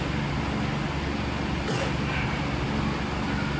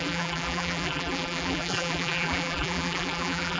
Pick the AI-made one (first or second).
second